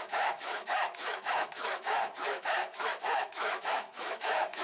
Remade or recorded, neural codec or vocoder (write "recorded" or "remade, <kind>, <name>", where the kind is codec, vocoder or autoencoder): remade, autoencoder, DAC-VAE